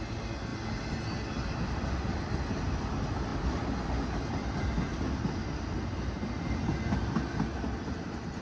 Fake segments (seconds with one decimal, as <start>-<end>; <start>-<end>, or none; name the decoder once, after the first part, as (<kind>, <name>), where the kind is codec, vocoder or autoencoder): none